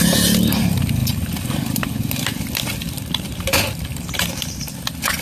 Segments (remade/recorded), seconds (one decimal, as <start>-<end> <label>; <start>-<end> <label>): 0.0-1.0 recorded; 1.0-4.1 remade; 4.1-5.2 recorded